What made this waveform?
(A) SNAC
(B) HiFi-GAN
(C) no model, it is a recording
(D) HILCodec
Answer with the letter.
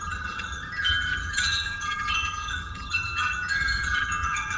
B